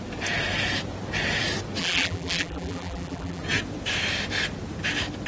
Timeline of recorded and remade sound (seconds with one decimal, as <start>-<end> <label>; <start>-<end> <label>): 0.0-1.8 recorded; 1.8-3.4 remade; 3.4-5.3 recorded